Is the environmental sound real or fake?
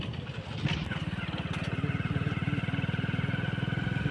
real